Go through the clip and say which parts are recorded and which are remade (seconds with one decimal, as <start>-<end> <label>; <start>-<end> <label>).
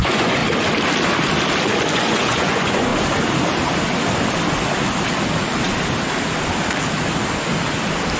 0.0-0.4 remade; 0.4-1.9 recorded; 1.9-2.9 remade; 2.9-8.2 recorded